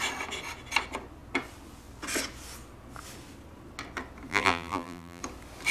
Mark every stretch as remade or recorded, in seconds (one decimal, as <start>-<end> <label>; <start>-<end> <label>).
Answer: 0.0-4.3 recorded; 4.3-5.2 remade; 5.2-5.7 recorded